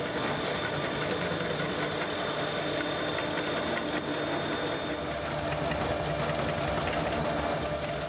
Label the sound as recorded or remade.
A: recorded